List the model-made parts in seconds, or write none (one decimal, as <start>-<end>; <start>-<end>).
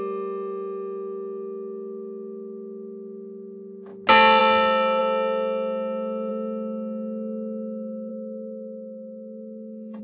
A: 8.1-10.0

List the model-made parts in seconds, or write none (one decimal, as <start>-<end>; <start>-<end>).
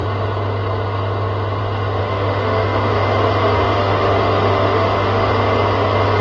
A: 2.0-2.9; 3.6-5.3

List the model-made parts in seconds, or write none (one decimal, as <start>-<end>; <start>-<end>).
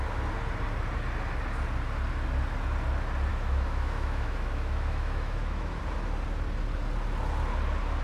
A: 3.3-5.8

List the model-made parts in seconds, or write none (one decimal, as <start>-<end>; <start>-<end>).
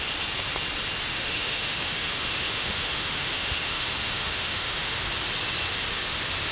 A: 1.1-5.0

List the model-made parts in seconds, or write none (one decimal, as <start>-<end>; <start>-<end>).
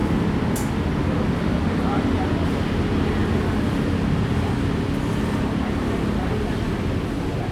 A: none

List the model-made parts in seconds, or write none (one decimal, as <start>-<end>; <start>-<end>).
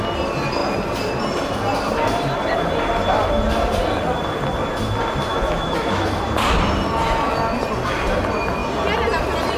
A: 5.3-6.2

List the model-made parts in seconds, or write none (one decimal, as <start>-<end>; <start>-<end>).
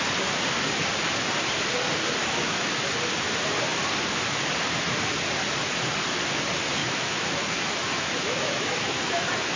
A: 2.2-2.9; 6.8-9.2